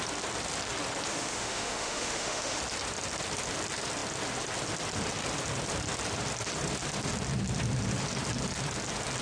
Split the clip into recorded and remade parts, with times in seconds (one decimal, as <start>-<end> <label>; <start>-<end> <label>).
0.0-1.1 recorded; 1.1-2.6 remade; 2.6-9.2 recorded